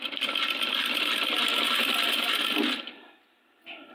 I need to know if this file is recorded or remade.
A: recorded